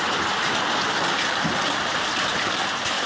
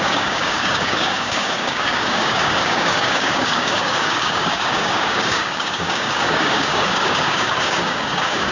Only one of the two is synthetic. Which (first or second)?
second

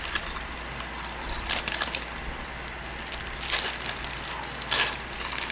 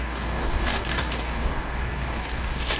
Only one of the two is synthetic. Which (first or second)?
second